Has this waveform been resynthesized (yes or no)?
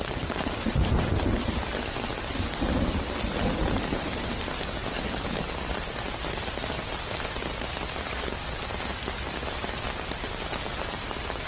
no